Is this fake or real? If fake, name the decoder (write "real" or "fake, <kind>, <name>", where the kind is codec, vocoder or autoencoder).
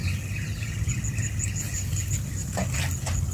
real